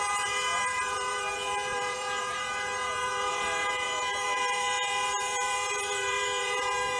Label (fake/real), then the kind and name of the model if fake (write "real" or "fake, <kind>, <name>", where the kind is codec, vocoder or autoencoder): fake, vocoder, Vocos